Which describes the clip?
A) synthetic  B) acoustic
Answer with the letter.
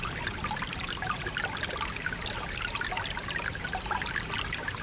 B